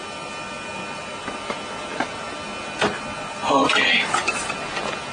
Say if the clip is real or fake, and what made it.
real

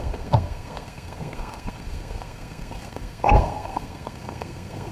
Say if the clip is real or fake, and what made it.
fake, codec, SNAC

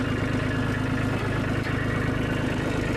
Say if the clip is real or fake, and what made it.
real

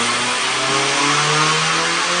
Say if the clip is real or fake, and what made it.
real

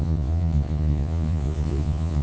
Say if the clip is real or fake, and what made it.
fake, vocoder, Vocos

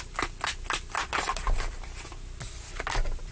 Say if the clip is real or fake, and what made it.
real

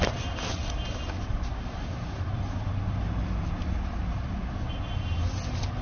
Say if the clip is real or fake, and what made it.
real